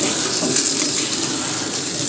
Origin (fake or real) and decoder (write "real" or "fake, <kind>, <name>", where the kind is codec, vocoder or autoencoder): real